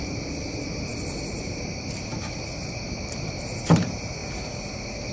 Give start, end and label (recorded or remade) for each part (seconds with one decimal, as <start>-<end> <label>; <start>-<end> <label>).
0.0-4.2 remade; 4.2-5.1 recorded